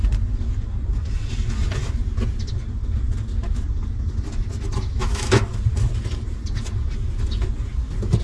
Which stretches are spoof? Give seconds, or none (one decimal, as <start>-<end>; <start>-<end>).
4.9-5.4